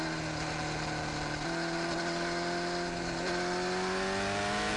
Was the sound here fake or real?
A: real